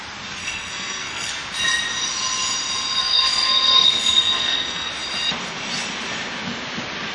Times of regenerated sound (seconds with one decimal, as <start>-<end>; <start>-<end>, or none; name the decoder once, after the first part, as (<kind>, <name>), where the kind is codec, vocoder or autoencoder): 0.4-1.3 (codec, SNAC); 3.0-4.9